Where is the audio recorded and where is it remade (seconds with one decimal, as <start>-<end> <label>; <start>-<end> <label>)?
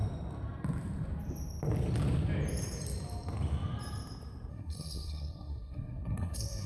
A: 0.0-4.5 recorded; 4.5-6.7 remade